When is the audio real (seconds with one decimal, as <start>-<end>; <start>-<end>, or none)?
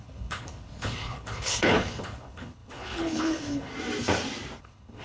3.7-4.6